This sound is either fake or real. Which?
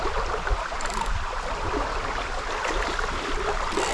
fake